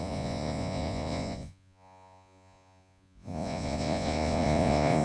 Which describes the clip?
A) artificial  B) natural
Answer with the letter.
A